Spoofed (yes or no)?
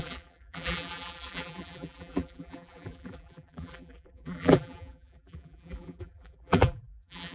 yes